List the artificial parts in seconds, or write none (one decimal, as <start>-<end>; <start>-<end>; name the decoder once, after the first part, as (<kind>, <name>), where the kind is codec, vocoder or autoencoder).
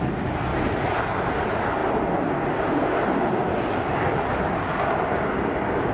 none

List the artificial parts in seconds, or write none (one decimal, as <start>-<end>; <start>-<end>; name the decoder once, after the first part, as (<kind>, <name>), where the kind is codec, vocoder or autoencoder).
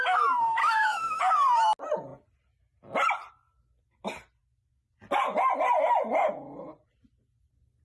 0.6-1.2 (autoencoder, DAC-VAE)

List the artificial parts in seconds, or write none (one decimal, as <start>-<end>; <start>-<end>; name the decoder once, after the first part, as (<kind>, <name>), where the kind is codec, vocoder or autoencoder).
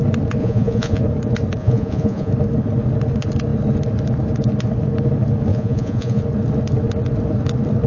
0.4-1.0 (vocoder, Vocos); 1.6-2.3; 5.5-6.2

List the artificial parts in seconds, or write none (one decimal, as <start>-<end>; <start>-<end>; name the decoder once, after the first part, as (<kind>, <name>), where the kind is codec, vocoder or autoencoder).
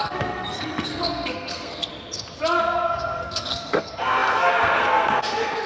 0.0-1.9 (codec, SNAC); 2.6-5.7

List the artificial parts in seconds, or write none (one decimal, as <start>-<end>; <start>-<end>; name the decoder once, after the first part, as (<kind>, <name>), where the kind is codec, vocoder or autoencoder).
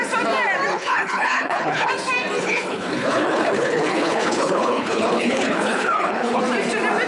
0.7-1.9 (codec, HILCodec); 2.4-6.4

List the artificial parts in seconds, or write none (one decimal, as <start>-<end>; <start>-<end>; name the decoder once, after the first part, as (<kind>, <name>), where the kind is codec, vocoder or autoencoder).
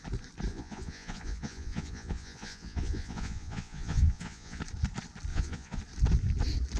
0.5-4.6 (vocoder, Vocos); 5.3-5.8